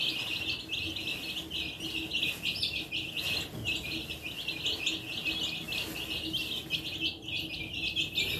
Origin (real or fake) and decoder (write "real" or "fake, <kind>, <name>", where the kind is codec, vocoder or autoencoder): real